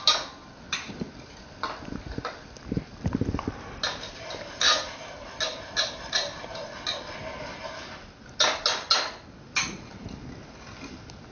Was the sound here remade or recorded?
recorded